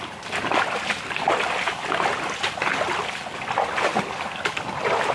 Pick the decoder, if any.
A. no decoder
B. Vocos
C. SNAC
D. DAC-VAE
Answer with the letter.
A